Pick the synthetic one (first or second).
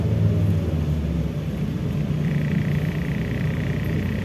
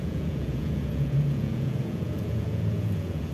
second